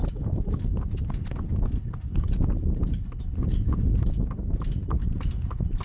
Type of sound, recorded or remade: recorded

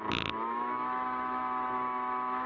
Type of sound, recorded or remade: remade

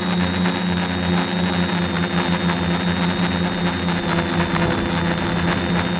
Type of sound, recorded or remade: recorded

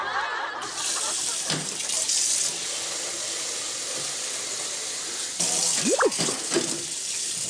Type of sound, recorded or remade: recorded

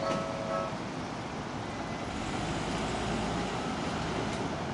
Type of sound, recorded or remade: recorded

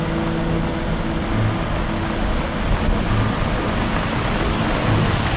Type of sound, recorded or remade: recorded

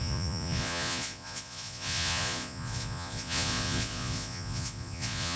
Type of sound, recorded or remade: remade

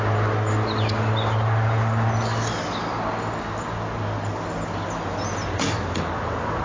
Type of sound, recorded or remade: recorded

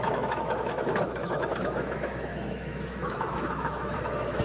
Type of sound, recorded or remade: remade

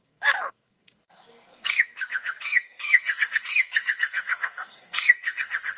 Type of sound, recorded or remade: remade